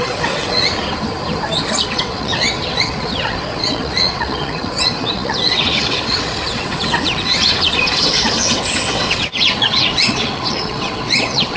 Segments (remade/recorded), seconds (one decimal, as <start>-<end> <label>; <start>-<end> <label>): 0.0-0.7 remade; 0.7-1.9 recorded; 1.9-11.6 remade